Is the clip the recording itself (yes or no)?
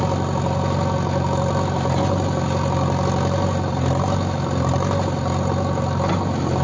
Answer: yes